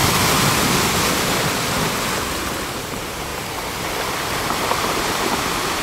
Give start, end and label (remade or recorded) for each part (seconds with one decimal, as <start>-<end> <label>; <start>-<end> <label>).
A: 0.0-1.4 recorded; 1.4-3.3 remade; 3.3-3.9 recorded; 3.9-5.8 remade